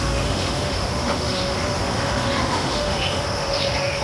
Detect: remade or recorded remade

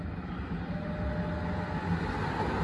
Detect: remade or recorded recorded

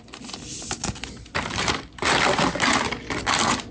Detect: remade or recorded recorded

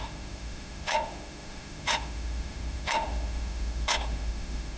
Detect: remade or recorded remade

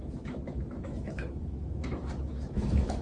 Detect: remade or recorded remade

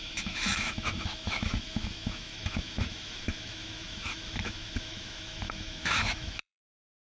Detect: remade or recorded remade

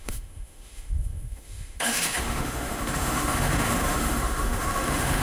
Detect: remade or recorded remade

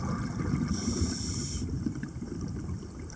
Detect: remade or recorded recorded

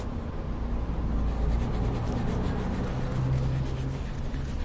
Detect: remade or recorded recorded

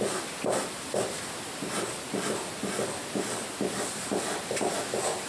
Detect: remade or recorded recorded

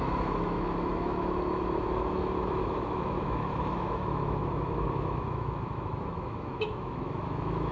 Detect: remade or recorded remade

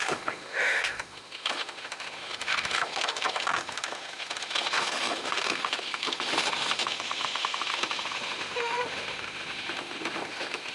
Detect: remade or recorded remade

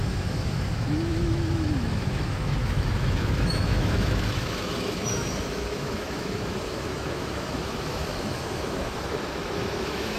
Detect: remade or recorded remade